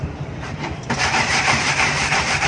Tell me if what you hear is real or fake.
fake